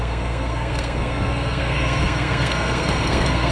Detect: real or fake fake